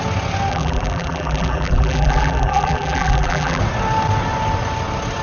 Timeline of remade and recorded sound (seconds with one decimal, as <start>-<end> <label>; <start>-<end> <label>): 0.0-0.5 recorded; 0.5-3.6 remade; 3.6-5.2 recorded